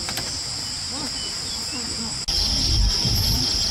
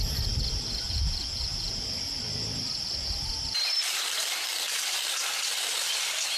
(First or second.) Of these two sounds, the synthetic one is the second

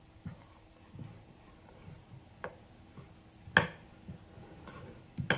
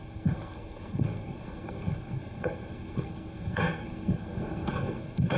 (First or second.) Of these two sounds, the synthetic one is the second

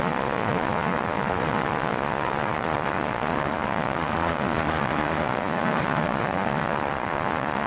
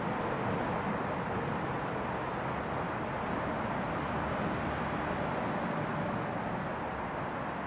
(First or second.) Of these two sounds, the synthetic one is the first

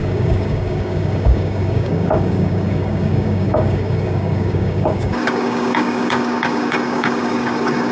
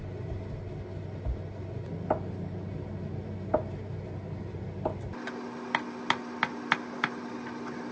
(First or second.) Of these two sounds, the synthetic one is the first